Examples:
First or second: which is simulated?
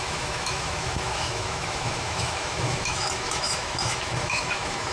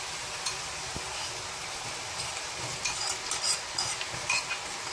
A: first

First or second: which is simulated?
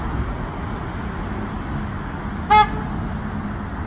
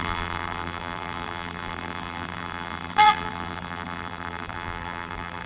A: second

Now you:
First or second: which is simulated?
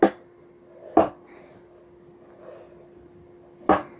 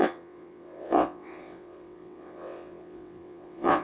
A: second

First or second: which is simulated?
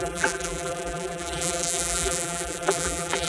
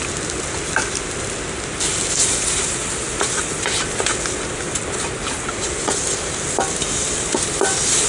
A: first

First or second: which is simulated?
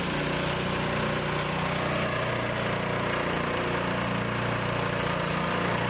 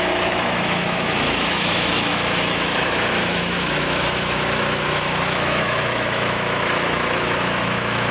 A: second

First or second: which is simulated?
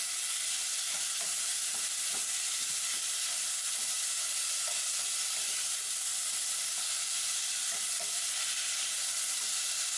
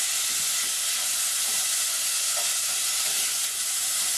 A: second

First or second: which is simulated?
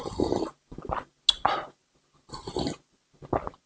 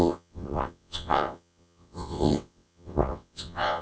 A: second